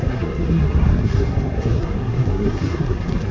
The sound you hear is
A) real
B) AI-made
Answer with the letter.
B